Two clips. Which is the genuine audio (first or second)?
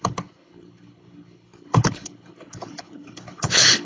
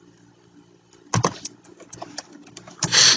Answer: second